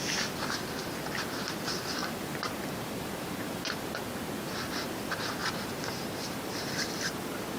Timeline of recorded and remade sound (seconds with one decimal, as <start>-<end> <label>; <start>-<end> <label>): 0.0-2.0 recorded; 2.0-4.0 remade; 4.0-5.4 recorded; 5.4-6.9 remade; 6.9-7.6 recorded